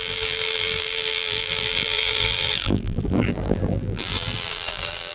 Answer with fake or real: fake